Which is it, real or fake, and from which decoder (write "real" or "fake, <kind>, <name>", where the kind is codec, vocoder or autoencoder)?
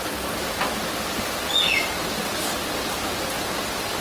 real